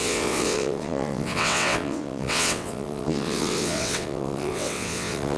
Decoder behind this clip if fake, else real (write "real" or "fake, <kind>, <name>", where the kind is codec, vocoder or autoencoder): fake, vocoder, WaveNeXt